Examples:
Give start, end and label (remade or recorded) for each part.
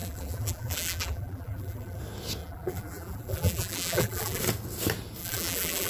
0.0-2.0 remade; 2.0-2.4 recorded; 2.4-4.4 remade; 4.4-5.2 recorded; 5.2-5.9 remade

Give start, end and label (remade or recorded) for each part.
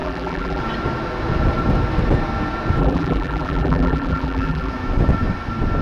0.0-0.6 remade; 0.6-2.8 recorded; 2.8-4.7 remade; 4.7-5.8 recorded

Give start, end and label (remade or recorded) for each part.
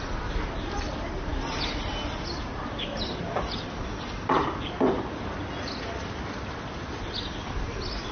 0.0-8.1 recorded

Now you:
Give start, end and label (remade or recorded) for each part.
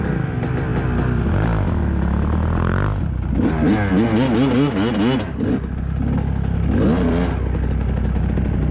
0.0-8.7 recorded